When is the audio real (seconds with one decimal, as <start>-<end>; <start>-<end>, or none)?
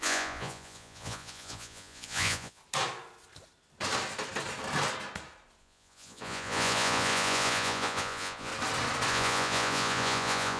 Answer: 2.6-5.6; 8.5-9.1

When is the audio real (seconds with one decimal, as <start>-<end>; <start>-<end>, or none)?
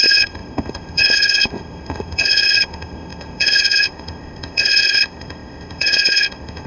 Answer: none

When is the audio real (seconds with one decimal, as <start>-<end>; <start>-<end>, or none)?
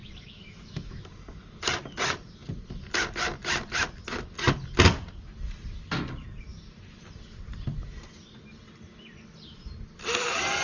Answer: 1.0-10.6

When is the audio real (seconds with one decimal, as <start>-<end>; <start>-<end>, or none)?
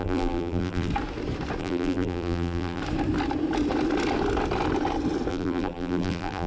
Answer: 0.9-1.6; 2.8-5.3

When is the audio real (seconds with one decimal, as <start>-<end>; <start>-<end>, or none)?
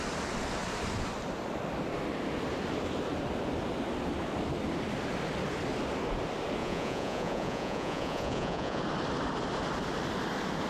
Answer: 0.0-6.6; 8.8-10.7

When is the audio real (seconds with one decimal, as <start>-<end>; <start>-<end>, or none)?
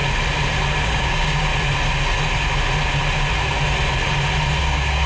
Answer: 0.0-0.8; 1.5-4.6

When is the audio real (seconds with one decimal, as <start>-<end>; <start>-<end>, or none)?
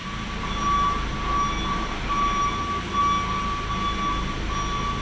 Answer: 0.0-5.0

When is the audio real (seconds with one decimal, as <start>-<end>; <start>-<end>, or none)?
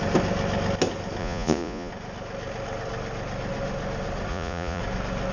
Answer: 0.0-1.2; 1.9-4.3; 4.8-5.3